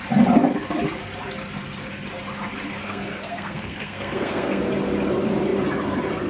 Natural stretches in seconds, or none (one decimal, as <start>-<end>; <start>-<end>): 0.0-2.8; 4.6-6.3